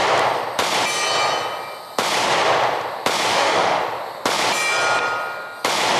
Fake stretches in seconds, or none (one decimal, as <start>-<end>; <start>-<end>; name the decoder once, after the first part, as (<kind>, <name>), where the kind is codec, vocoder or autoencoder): 3.3-3.8 (autoencoder, DAC-VAE)